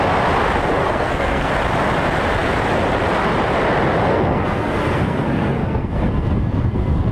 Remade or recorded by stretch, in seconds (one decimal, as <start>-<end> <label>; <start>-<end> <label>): 0.0-0.8 recorded; 0.8-1.5 remade; 1.5-4.1 recorded; 4.1-7.1 remade